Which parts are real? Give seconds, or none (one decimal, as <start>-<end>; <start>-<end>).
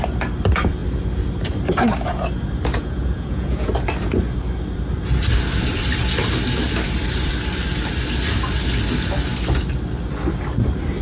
0.0-2.8; 3.7-11.0